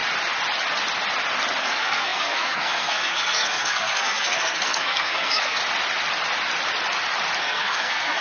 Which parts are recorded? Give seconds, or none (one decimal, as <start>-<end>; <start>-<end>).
0.0-1.6; 5.6-7.4